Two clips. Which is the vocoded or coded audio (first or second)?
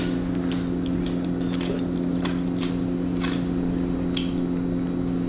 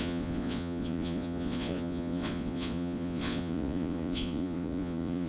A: second